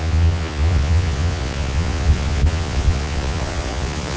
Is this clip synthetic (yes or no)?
yes